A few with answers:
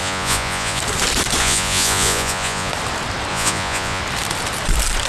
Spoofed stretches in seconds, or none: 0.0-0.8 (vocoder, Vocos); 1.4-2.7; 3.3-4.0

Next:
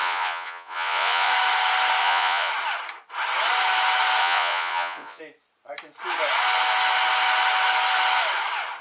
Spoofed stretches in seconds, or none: 0.0-1.3 (vocoder, Vocos); 2.0-2.5; 4.2-5.2

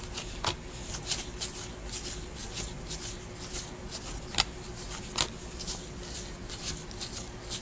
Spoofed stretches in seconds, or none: none

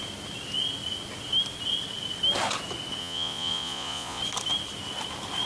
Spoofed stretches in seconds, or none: 3.0-4.2 (vocoder, Vocos)

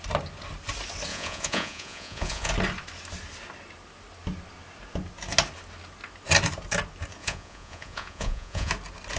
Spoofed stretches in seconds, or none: 1.1-2.5 (vocoder, Vocos); 7.2-8.7

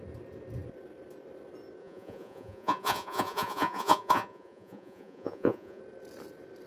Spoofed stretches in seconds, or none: 1.8-5.8 (vocoder, Vocos)

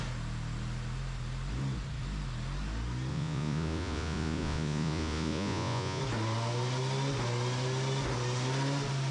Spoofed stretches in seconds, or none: 3.1-6.0 (vocoder, Vocos)